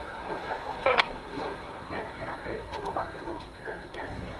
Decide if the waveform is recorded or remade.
remade